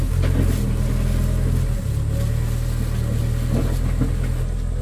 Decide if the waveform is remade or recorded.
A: recorded